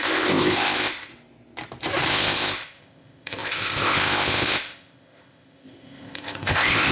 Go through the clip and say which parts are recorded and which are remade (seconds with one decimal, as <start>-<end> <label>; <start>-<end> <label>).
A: 0.0-1.1 remade; 1.1-2.1 recorded; 2.1-6.9 remade

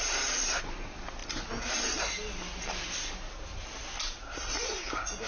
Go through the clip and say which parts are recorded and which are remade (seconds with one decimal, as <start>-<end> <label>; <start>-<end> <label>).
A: 0.0-5.3 recorded

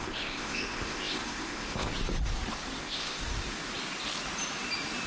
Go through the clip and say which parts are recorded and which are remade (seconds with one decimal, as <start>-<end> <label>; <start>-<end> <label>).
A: 0.0-1.9 remade; 1.9-2.8 recorded; 2.8-3.2 remade; 3.2-5.1 recorded